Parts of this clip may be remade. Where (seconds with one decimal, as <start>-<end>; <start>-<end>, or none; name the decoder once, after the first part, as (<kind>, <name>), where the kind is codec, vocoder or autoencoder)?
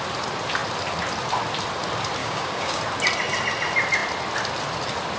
2.2-2.8 (codec, DAC)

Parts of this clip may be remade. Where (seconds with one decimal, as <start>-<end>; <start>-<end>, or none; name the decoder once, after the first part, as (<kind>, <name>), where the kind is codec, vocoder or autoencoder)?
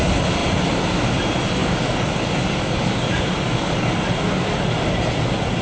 1.6-3.9 (codec, DAC)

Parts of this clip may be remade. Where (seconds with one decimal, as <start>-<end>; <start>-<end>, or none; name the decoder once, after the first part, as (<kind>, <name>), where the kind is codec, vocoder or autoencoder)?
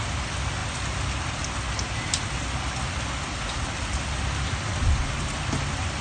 none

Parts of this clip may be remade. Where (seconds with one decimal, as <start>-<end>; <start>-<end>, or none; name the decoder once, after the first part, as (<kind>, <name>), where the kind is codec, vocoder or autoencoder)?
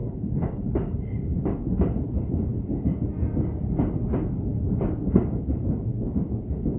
0.0-0.6 (codec, DAC)